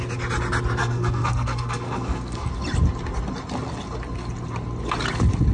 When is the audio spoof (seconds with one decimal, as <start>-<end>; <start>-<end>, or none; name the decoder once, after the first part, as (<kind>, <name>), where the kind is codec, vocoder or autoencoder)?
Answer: 0.8-2.5 (codec, SNAC)